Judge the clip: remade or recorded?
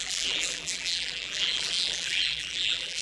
remade